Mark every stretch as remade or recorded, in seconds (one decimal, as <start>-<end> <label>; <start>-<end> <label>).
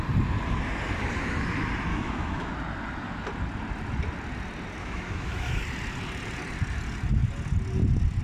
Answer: 0.0-1.9 recorded; 1.9-2.5 remade; 2.5-4.8 recorded; 4.8-5.6 remade; 5.6-8.2 recorded